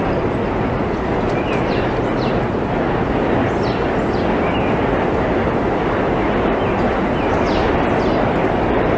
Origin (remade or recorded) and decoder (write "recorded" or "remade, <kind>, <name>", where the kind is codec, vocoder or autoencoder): recorded